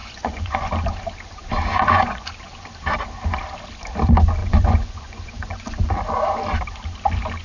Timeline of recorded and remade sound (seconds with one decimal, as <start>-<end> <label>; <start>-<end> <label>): 0.0-0.7 remade; 0.7-1.7 recorded; 1.7-2.5 remade; 2.5-4.4 recorded; 4.4-5.9 remade; 5.9-7.4 recorded